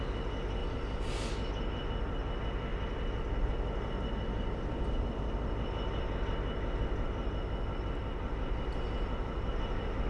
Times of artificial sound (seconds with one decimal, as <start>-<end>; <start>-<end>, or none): 0.6-1.1; 2.7-3.4; 8.0-9.5